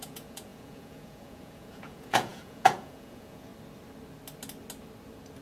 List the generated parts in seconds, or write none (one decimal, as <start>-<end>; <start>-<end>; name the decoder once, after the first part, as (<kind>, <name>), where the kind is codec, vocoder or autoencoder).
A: 0.0-3.5 (vocoder, Vocos)